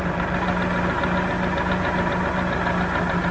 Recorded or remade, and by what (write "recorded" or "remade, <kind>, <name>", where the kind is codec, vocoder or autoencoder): recorded